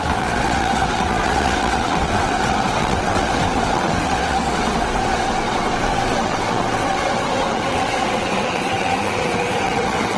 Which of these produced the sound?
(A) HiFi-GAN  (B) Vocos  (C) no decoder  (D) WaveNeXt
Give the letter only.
D